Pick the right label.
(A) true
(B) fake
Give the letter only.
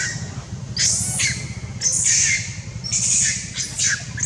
A